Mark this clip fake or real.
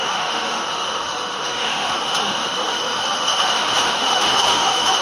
fake